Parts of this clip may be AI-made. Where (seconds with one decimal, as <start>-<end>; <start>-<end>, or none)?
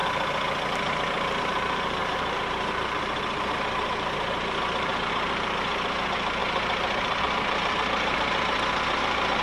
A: 0.7-9.4